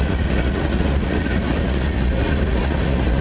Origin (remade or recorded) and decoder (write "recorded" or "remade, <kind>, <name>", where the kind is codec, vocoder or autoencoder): remade, vocoder, Vocos